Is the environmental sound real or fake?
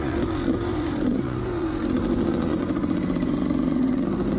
fake